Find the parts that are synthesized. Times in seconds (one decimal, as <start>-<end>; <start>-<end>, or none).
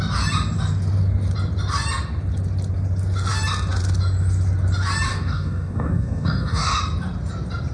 5.1-6.8